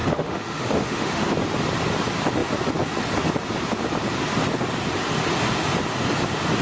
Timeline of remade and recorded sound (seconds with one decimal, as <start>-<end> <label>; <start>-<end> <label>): 0.0-1.2 remade; 1.2-6.6 recorded